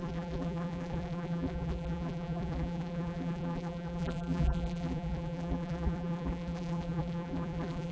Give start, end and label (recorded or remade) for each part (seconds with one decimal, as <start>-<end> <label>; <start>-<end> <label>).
0.0-7.9 remade